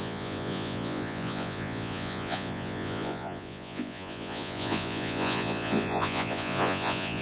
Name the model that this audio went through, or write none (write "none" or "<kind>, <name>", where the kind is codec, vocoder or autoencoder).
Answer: vocoder, Vocos